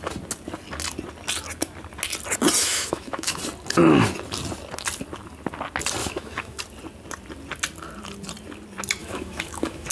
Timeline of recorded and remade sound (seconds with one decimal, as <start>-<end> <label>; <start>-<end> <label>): 0.0-2.6 recorded; 2.6-3.4 remade; 3.4-6.0 recorded; 6.0-6.6 remade; 6.6-9.0 recorded; 9.0-9.9 remade